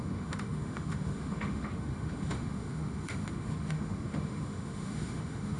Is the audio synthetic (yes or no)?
yes